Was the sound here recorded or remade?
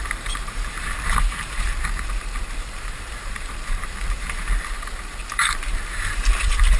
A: remade